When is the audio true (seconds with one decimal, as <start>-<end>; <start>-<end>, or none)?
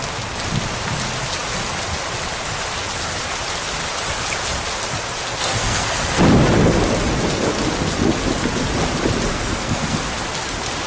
0.0-5.4; 6.2-9.3; 10.0-10.9